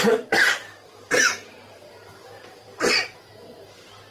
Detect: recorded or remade remade